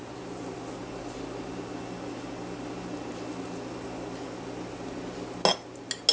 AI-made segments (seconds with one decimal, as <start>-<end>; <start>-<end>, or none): none